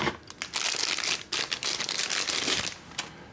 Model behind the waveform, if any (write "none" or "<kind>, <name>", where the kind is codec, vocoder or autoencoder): none